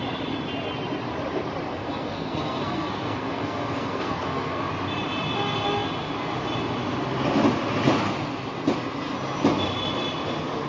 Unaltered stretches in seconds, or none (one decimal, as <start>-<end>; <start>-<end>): 0.0-1.7; 4.7-10.7